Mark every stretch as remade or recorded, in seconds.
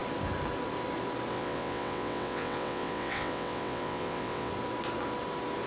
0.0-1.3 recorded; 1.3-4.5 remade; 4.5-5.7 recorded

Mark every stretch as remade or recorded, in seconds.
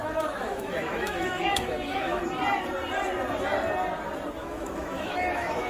0.0-2.2 remade; 2.2-4.4 recorded; 4.4-5.7 remade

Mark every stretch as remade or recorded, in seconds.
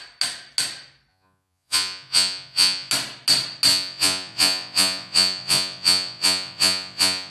0.0-1.1 recorded; 1.1-2.9 remade; 2.9-3.7 recorded; 3.7-7.3 remade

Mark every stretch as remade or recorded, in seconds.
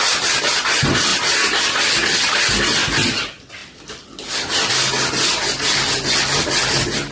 0.0-7.1 recorded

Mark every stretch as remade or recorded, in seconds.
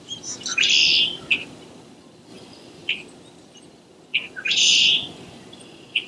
0.0-2.3 recorded; 2.3-2.9 remade; 2.9-4.1 recorded; 4.1-6.1 remade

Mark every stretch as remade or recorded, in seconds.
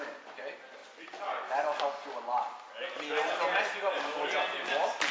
0.0-5.1 recorded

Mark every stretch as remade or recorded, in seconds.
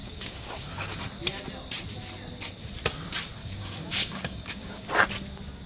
0.0-1.0 remade; 1.0-3.4 recorded; 3.4-4.9 remade; 4.9-5.7 recorded